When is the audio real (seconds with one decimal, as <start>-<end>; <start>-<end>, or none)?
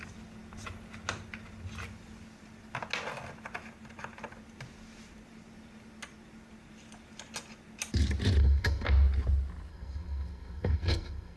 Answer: 0.0-8.4; 8.9-9.7